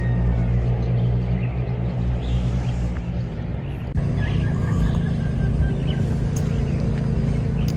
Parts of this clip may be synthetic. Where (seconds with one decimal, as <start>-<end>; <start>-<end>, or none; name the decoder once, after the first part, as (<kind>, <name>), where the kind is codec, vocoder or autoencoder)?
3.5-5.7 (vocoder, BigVGAN v2)